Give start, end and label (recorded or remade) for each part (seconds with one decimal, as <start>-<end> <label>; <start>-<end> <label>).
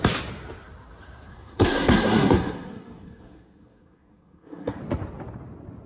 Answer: 0.0-1.3 recorded; 1.3-4.8 remade; 4.8-5.9 recorded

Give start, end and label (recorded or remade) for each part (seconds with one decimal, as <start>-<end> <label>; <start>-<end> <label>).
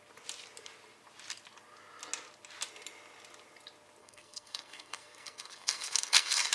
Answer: 0.0-4.0 recorded; 4.0-6.5 remade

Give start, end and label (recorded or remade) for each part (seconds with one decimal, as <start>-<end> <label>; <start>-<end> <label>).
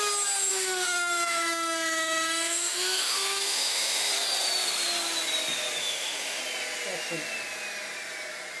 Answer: 0.0-0.5 recorded; 0.5-4.1 remade; 4.1-5.8 recorded; 5.8-6.4 remade; 6.4-8.6 recorded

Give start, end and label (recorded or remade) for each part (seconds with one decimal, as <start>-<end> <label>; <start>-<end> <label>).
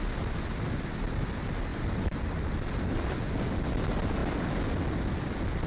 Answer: 0.0-5.7 recorded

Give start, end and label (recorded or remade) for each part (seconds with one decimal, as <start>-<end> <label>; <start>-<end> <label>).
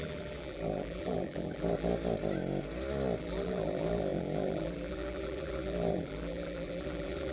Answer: 0.0-1.9 remade; 1.9-3.2 recorded; 3.2-7.3 remade